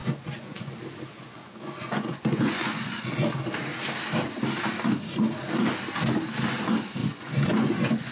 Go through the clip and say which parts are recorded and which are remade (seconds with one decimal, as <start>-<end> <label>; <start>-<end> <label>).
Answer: 0.0-0.7 remade; 0.7-1.1 recorded; 1.1-3.1 remade; 3.1-7.0 recorded; 7.0-8.1 remade